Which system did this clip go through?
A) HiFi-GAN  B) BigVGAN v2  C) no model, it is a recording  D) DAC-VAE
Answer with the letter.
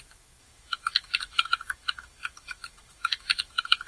D